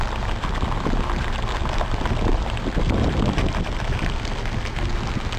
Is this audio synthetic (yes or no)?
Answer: no